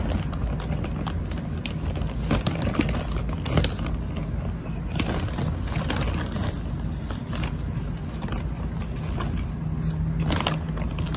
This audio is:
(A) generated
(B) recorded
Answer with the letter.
B